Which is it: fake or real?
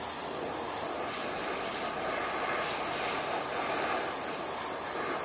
real